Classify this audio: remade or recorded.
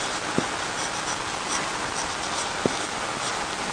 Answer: recorded